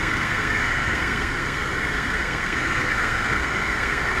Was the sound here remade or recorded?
remade